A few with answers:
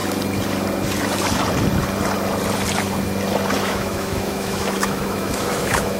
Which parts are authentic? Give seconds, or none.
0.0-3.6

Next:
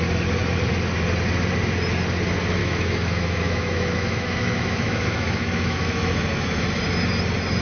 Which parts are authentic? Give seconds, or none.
0.0-2.6; 6.6-7.6

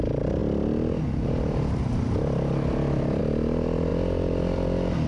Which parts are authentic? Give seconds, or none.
0.0-5.1

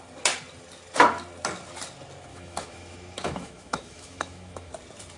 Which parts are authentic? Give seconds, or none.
0.0-2.3; 4.7-5.2

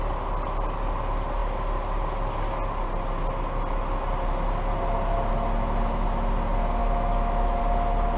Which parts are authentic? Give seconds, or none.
0.0-6.8; 7.6-8.2

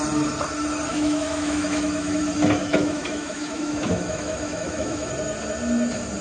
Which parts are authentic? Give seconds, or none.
0.0-0.9; 2.2-2.6; 5.1-6.2

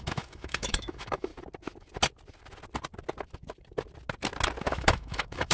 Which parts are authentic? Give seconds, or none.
1.3-4.6

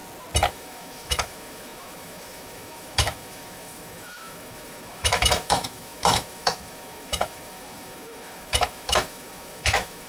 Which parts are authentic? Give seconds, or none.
0.0-0.5